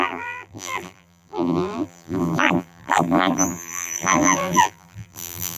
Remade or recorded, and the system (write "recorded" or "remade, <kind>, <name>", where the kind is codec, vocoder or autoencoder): remade, vocoder, BigVGAN v2